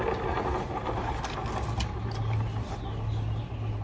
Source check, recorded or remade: recorded